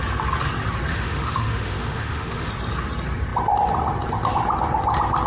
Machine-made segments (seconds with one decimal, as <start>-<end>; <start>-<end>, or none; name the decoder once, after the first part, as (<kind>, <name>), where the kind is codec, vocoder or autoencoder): 0.9-2.5 (autoencoder, DAC-VAE)